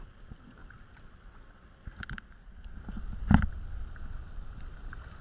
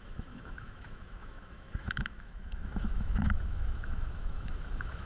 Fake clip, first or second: second